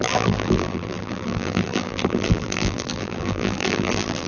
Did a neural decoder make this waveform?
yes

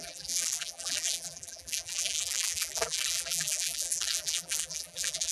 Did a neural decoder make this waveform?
yes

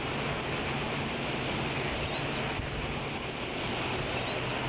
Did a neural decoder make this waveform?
no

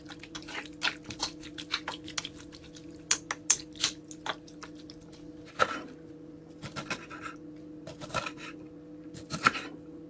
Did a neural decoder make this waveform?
no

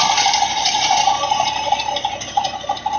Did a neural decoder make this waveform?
yes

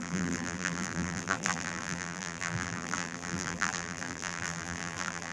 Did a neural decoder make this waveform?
yes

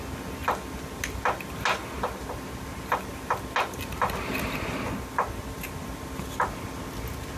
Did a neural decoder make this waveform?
no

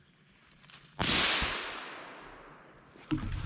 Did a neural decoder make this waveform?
no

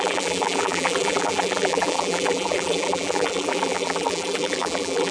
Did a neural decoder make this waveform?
yes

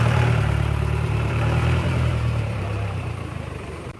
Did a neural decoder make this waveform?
yes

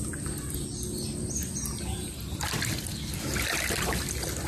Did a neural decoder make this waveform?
no